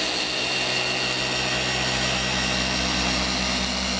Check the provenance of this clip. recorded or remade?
recorded